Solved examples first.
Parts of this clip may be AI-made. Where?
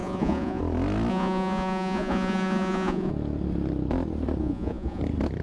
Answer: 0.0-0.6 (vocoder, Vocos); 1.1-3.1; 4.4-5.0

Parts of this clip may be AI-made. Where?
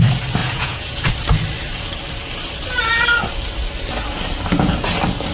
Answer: 0.4-1.1 (vocoder, Vocos)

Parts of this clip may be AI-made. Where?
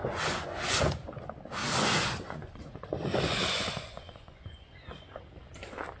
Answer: 0.0-1.2 (vocoder, Vocos); 1.6-5.2